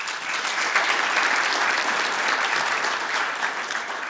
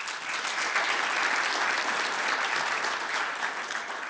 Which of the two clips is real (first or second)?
second